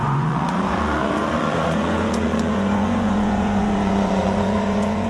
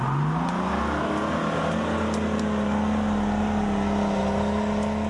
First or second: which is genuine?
second